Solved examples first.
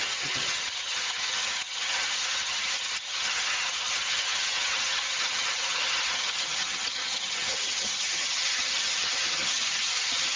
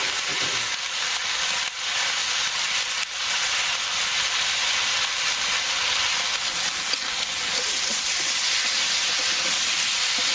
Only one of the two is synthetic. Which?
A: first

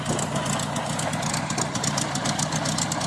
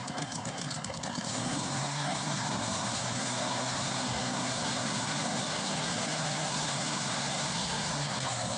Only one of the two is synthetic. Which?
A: second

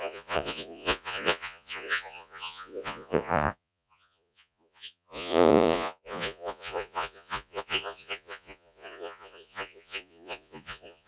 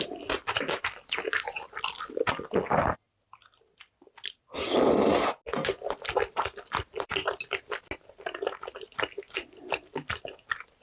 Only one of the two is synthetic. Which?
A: first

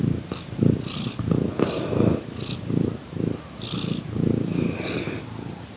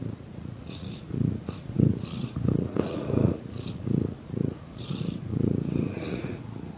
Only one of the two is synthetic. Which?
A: second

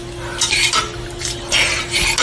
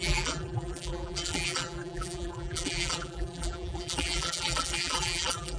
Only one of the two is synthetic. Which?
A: second